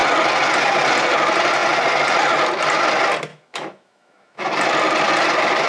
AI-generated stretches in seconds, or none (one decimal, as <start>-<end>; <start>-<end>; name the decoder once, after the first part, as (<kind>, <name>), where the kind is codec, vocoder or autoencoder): 3.3-4.5 (autoencoder, DAC-VAE)